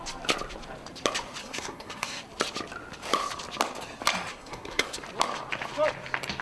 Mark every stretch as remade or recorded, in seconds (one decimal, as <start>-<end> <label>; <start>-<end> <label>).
0.0-1.4 recorded; 1.4-2.2 remade; 2.2-4.3 recorded; 4.3-5.0 remade; 5.0-6.4 recorded